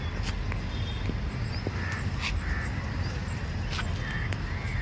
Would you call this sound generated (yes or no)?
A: no